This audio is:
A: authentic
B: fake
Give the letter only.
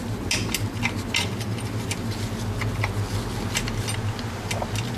A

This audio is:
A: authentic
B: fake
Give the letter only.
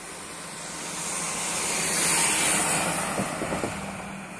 A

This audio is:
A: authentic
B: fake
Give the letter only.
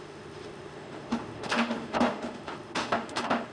B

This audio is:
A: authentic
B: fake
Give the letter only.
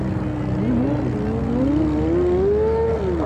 A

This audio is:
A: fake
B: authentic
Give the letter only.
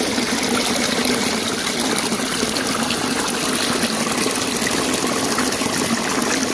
B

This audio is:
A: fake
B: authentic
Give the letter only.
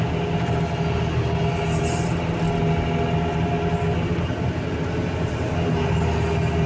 B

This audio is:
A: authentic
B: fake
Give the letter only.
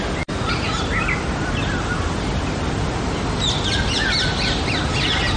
A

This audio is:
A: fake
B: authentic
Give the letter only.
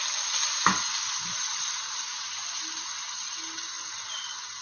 B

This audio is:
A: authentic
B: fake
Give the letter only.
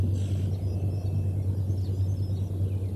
A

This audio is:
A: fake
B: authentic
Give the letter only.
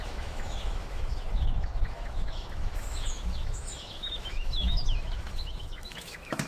A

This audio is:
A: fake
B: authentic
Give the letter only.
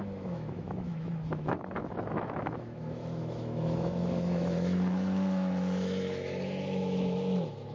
A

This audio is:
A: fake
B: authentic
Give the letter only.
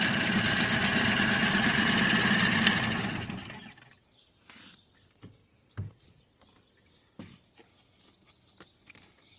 B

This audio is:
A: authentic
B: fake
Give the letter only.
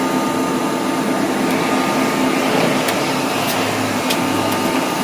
A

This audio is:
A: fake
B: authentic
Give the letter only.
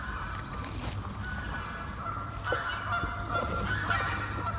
B